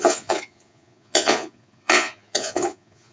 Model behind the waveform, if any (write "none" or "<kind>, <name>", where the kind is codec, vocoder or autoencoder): vocoder, Vocos